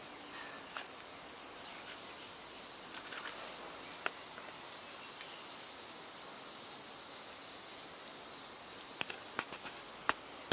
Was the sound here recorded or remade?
recorded